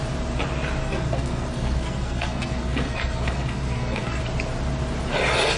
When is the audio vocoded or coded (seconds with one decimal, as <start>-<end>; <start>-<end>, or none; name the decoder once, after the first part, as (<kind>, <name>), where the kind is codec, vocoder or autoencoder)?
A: 0.8-4.2 (codec, SNAC)